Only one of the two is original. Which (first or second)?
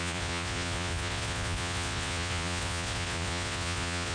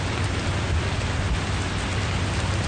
second